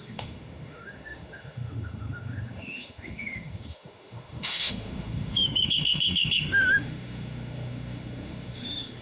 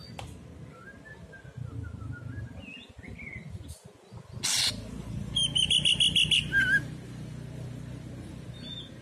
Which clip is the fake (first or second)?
first